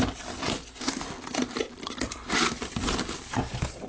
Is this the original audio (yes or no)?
no